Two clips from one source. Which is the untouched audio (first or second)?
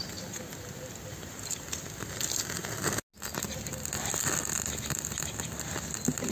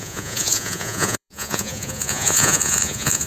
first